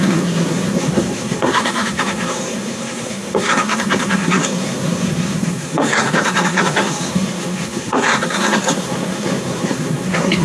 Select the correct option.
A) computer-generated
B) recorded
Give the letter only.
A